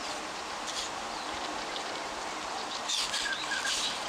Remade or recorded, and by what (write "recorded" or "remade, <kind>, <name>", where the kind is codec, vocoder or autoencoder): recorded